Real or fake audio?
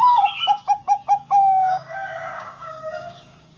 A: fake